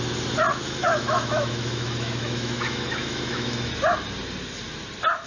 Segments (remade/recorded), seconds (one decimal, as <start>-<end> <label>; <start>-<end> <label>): 0.0-0.5 recorded; 0.5-3.7 remade; 3.7-5.3 recorded